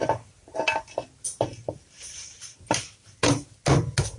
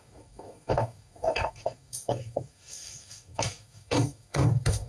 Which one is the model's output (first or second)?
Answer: second